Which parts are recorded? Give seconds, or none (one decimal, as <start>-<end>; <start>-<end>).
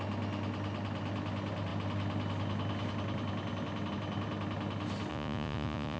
0.0-5.1